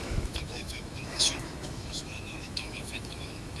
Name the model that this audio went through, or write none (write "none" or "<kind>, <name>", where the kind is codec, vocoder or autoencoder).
autoencoder, DAC-VAE